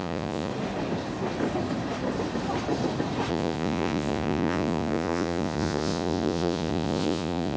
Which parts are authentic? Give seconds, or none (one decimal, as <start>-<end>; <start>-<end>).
0.5-3.3

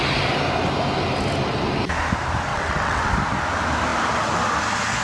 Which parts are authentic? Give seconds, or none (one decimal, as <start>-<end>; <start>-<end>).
0.0-2.5; 3.1-5.0

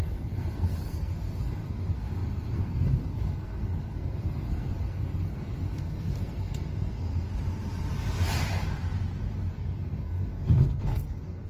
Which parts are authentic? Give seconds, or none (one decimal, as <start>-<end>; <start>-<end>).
7.3-9.5

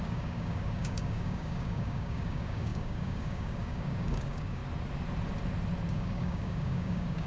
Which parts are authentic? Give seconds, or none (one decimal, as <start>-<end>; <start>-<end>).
4.6-5.9